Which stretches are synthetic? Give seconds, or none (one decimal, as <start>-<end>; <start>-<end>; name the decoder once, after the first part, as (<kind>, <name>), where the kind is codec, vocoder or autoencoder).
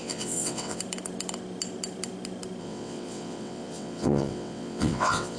0.0-0.8 (vocoder, WaveNeXt); 2.6-5.4